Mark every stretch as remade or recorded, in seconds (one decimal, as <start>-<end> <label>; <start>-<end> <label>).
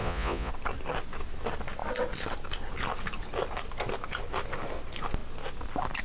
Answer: 0.0-0.5 remade; 0.5-6.0 recorded